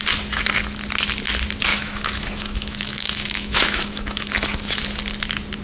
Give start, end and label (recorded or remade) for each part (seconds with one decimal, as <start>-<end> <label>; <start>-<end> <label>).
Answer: 0.0-1.7 recorded; 1.7-4.8 remade; 4.8-5.6 recorded